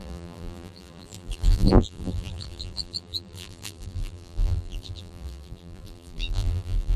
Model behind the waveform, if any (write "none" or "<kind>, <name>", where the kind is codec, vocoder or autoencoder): vocoder, BigVGAN v2